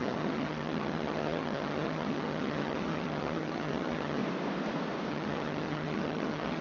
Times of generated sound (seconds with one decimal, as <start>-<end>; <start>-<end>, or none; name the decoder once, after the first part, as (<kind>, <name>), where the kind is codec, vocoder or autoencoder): 0.0-4.2 (vocoder, HiFi-GAN); 5.1-6.6